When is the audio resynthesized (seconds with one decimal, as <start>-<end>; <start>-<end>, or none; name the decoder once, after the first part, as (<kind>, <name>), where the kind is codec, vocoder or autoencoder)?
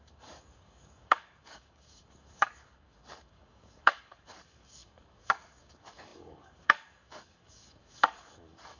0.0-8.8 (codec, DAC)